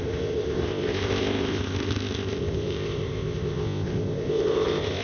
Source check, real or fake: fake